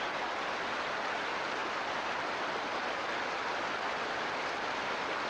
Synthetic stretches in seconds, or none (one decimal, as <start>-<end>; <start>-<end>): none